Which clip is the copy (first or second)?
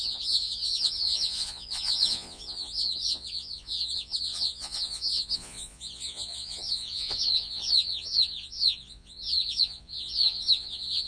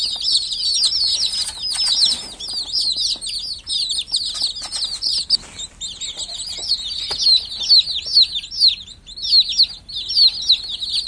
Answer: first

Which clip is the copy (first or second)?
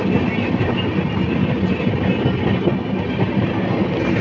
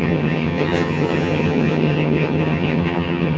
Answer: second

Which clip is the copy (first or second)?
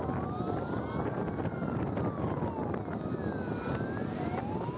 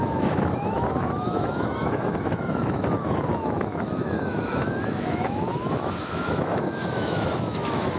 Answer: second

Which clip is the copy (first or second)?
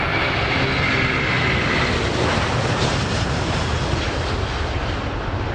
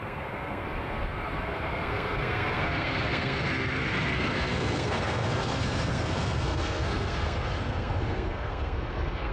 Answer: second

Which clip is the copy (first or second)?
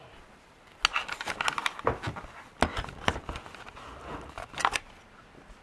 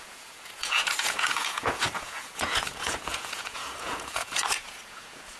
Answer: second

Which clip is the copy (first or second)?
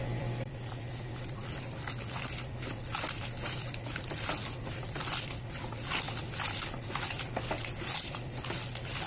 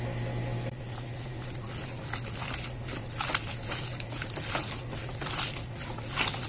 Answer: first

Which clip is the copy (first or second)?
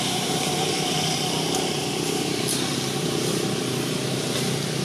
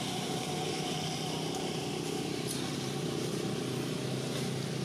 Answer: first